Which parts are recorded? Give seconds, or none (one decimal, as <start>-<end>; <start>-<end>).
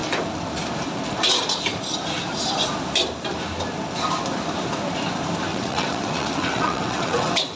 0.0-5.5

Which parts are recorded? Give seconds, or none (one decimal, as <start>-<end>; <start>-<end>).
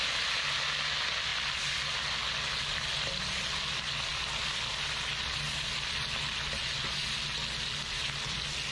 0.0-8.7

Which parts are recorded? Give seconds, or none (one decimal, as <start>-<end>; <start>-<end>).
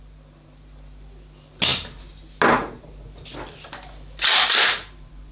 0.0-5.3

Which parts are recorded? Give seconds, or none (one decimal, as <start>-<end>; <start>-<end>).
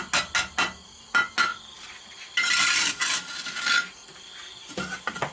0.0-5.3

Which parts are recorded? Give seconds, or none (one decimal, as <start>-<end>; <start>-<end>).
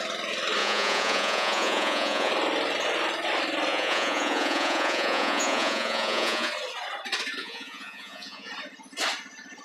0.0-0.6; 2.3-3.7; 6.5-7.4; 8.5-9.6